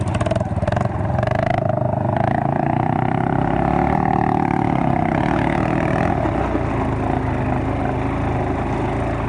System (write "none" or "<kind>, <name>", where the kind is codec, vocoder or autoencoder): none